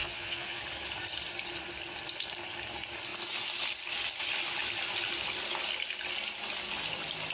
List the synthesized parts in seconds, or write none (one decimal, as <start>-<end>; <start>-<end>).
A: 0.0-0.6